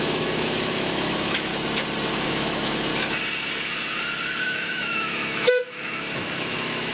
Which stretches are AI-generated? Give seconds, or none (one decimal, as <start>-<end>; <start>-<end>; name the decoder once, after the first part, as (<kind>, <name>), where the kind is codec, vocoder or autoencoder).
0.0-1.5 (autoencoder, DAC-VAE); 2.1-2.9; 4.4-6.9